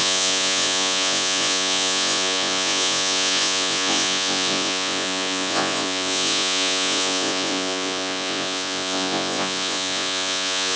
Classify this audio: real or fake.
fake